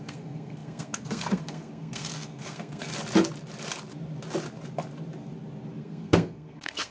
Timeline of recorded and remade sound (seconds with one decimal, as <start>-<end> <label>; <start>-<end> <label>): 0.0-2.9 remade; 2.9-5.8 recorded; 5.8-6.9 remade